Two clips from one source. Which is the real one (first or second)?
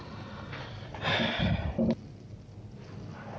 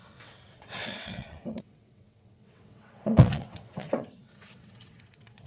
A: first